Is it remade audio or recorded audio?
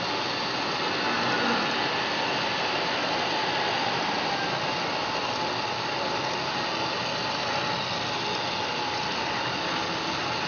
recorded